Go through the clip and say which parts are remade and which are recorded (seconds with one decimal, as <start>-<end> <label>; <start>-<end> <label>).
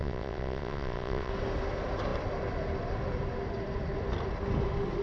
0.0-1.3 remade; 1.3-5.0 recorded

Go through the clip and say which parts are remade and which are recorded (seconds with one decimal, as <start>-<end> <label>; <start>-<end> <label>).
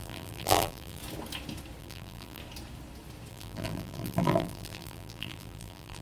0.0-1.0 remade; 1.0-1.8 recorded; 1.8-2.4 remade; 2.4-3.3 recorded; 3.3-6.0 remade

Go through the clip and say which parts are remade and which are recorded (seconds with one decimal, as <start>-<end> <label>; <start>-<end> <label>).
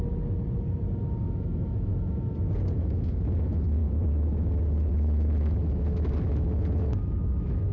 0.0-1.2 recorded; 1.2-1.9 remade; 1.9-2.8 recorded; 2.8-3.8 remade; 3.8-4.9 recorded; 4.9-7.7 remade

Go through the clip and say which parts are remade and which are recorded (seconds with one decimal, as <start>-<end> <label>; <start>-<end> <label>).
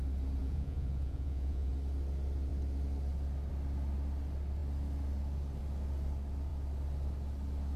0.0-0.4 recorded; 0.4-1.7 remade; 1.7-7.8 recorded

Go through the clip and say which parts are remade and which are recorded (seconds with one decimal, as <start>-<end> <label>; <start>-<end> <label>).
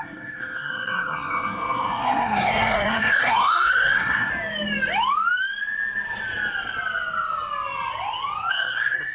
0.0-4.3 remade; 4.3-8.5 recorded; 8.5-9.1 remade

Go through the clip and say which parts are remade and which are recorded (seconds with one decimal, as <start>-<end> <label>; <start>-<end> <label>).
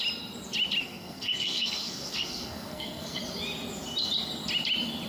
0.0-0.8 recorded; 0.8-3.2 remade; 3.2-5.1 recorded